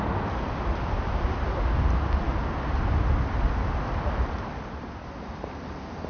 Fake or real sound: real